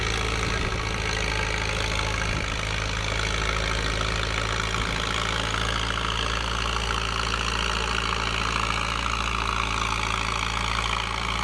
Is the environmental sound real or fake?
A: real